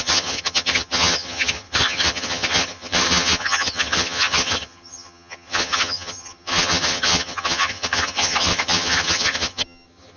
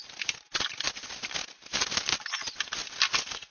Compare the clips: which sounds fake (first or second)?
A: first